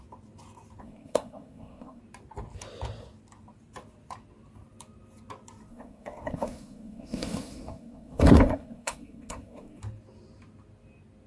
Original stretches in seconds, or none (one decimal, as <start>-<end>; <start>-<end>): 0.0-0.8; 2.0-5.7; 9.8-11.3